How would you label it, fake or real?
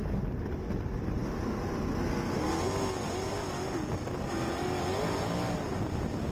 real